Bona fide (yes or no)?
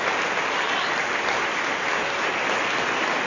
yes